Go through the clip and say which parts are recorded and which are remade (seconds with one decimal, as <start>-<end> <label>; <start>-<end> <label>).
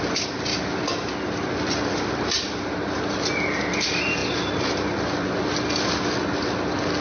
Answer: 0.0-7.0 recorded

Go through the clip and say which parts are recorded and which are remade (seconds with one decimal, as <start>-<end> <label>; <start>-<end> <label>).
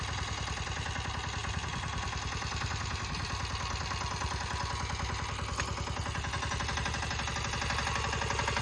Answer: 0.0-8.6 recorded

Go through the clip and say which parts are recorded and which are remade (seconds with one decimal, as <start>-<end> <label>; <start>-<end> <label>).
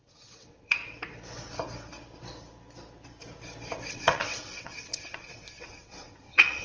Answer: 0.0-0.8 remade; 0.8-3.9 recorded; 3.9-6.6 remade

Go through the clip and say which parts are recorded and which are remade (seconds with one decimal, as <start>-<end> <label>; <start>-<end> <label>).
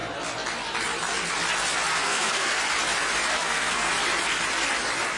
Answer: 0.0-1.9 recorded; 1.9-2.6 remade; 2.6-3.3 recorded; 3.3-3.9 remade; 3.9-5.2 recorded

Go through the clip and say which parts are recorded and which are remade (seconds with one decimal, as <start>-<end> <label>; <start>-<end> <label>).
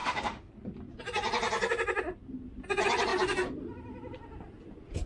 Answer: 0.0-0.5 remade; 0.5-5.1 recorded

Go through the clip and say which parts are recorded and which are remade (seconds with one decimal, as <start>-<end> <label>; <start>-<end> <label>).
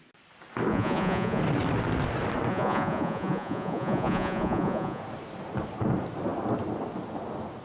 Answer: 0.0-0.7 recorded; 0.7-1.4 remade; 1.4-2.5 recorded; 2.5-5.0 remade; 5.0-7.6 recorded